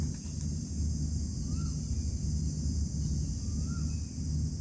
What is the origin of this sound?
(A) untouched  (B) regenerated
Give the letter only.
A